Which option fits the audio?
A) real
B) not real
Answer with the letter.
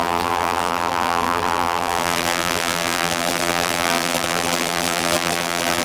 B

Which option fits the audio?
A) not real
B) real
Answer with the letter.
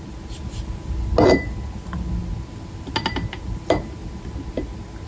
B